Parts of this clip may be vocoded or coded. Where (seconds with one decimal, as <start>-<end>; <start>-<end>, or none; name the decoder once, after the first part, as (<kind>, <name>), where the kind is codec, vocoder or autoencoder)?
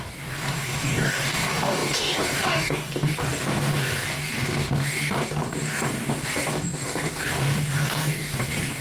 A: 0.0-8.8 (codec, DAC)